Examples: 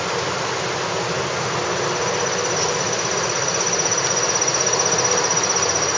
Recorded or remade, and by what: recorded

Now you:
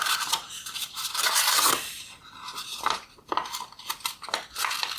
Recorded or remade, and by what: recorded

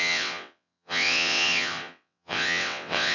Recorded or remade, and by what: remade, vocoder, WaveNeXt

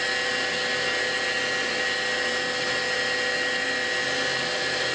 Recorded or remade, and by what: recorded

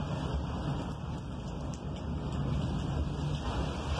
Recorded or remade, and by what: recorded